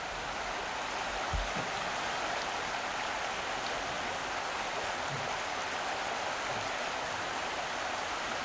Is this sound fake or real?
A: real